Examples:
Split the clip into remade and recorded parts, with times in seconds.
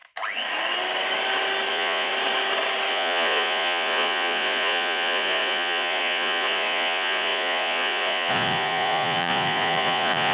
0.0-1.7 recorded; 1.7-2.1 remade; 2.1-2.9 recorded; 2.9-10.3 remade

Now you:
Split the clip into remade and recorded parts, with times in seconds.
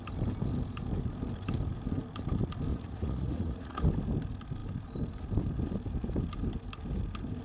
0.0-2.7 recorded; 2.7-3.9 remade; 3.9-7.4 recorded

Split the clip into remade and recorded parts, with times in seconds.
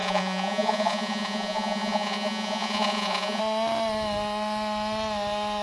0.0-3.4 remade; 3.4-5.6 recorded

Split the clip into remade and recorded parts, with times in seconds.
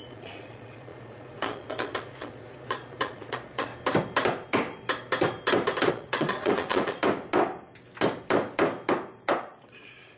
0.0-3.7 remade; 3.7-5.9 recorded; 5.9-7.0 remade; 7.0-9.4 recorded; 9.4-10.2 remade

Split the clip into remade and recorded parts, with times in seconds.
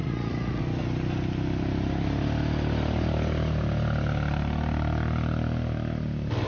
0.0-0.6 remade; 0.6-6.5 recorded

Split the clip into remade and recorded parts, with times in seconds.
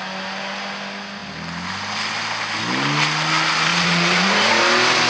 0.0-3.7 recorded; 3.7-4.6 remade; 4.6-5.1 recorded